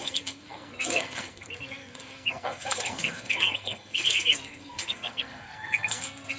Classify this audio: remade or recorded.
remade